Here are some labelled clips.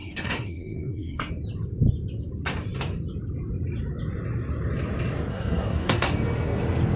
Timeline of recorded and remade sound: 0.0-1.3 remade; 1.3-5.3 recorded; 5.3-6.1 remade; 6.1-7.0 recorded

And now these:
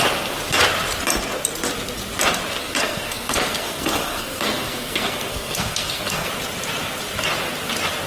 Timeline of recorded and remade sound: 0.0-2.6 recorded; 2.6-6.3 remade; 6.3-8.1 recorded

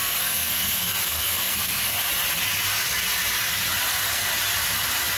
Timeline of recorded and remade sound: 0.0-1.9 remade; 1.9-3.9 recorded; 3.9-4.3 remade; 4.3-5.2 recorded

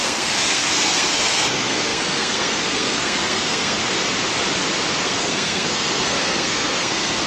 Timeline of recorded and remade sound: 0.0-3.8 remade; 3.8-5.0 recorded; 5.0-7.3 remade

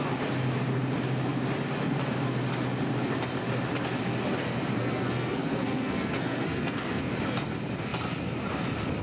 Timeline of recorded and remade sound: 0.0-4.8 recorded; 4.8-7.1 remade; 7.1-9.0 recorded

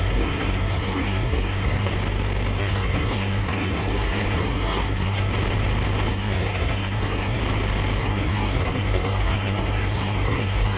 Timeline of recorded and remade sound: 0.0-1.9 remade; 1.9-2.6 recorded; 2.6-5.3 remade; 5.3-6.1 recorded; 6.1-7.4 remade; 7.4-8.0 recorded; 8.0-10.8 remade